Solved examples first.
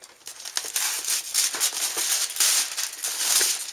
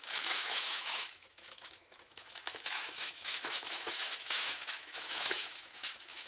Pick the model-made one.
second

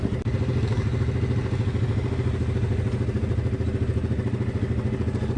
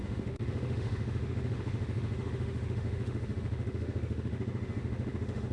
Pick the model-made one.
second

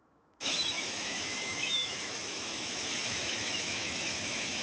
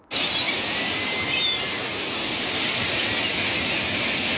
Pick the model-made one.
first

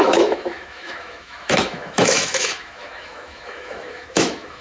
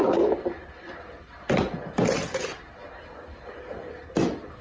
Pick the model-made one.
first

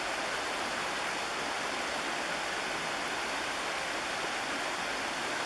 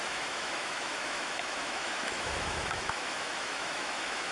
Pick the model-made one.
second